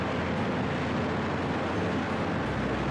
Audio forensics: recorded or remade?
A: recorded